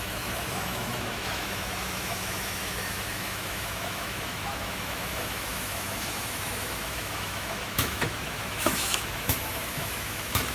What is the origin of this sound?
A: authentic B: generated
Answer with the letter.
B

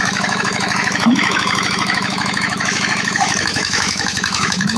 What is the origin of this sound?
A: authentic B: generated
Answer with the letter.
B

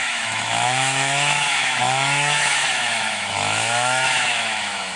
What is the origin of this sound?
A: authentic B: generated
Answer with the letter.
B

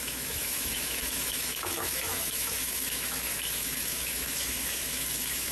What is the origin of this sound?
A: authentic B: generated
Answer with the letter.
B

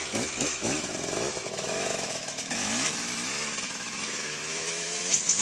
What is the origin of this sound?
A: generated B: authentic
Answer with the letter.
A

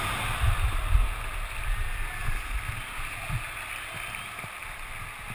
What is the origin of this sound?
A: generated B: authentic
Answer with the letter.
B